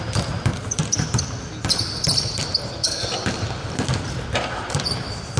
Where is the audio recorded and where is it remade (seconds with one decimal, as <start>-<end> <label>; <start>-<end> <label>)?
0.0-5.4 recorded